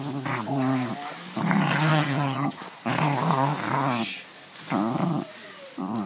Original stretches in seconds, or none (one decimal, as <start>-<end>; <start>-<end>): 0.0-1.9; 2.6-6.1